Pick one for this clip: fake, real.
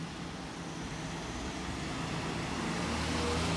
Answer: real